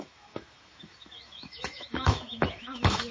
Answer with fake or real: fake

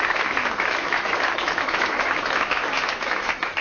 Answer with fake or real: fake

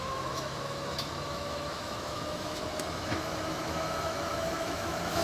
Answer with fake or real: fake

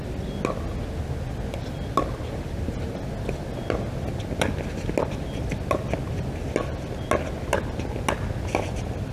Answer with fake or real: real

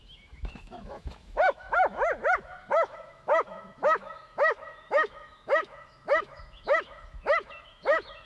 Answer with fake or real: fake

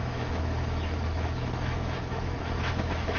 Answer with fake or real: fake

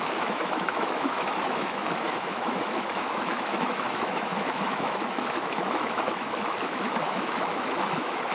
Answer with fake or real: fake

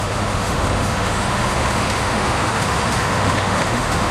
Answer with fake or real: fake